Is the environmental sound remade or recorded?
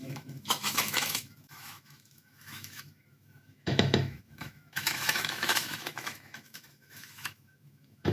remade